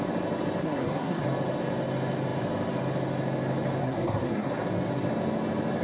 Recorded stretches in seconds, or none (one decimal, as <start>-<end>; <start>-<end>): 0.0-0.6; 1.2-3.8; 4.5-5.8